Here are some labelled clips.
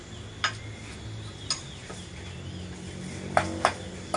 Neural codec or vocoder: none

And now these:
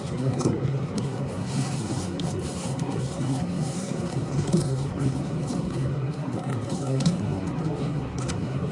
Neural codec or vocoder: codec, SNAC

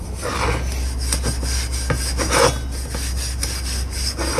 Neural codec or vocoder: none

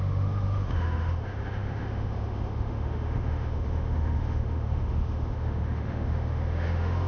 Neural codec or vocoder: autoencoder, DAC-VAE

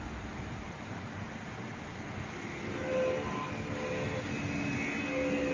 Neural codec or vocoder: none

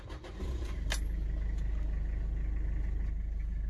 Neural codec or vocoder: none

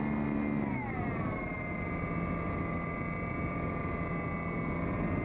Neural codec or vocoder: none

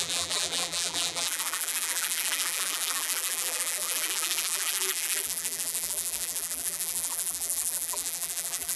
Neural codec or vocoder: vocoder, BigVGAN v2